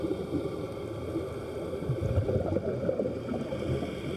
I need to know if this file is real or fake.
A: real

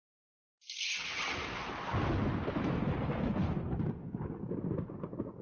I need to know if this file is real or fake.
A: real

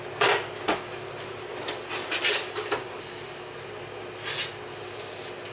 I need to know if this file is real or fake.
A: real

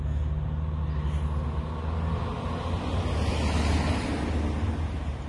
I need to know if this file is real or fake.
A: real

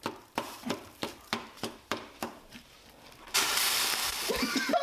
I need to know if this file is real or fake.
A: fake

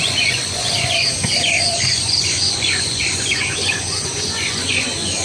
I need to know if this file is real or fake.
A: fake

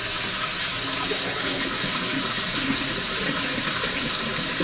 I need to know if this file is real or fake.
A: real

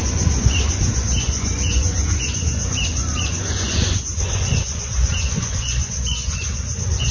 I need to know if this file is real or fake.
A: fake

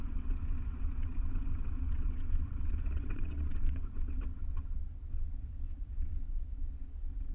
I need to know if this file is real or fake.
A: fake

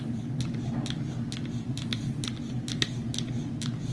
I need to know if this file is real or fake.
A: real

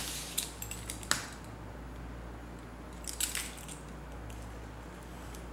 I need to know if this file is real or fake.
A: real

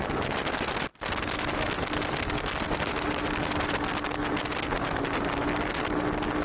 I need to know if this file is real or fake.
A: real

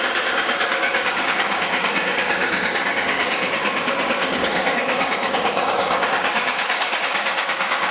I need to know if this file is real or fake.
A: fake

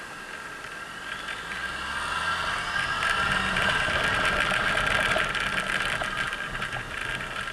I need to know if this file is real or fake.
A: real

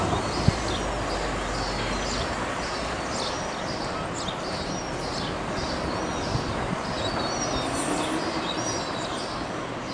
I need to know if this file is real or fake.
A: real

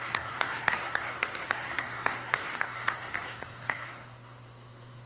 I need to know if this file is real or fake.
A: fake